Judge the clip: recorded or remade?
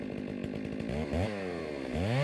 recorded